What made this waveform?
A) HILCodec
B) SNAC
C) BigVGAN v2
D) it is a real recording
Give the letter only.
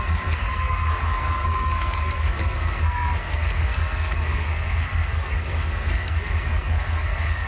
B